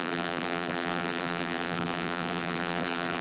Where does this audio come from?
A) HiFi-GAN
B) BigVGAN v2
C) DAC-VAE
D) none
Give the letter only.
B